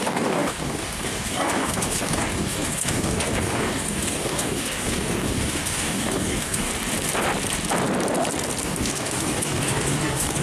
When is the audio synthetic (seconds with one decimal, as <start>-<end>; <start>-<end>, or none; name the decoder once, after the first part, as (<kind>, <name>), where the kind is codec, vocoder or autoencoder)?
0.0-6.7 (codec, DAC); 8.6-10.4